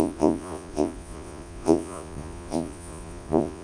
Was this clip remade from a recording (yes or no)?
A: yes